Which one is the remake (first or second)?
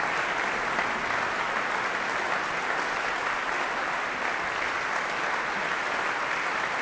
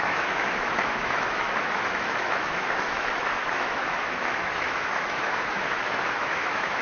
second